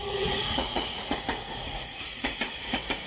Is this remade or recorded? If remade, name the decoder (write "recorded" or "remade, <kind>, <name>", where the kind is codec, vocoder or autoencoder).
remade, vocoder, Vocos